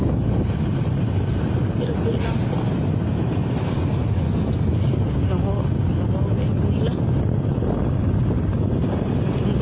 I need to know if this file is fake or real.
real